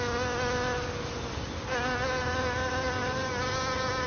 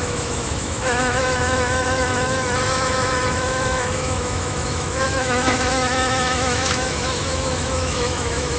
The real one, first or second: first